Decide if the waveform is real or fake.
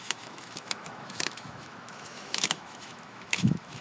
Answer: fake